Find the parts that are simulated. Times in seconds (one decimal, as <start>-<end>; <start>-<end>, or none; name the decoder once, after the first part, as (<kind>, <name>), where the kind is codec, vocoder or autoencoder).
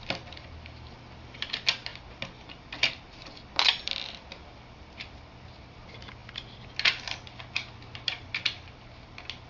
none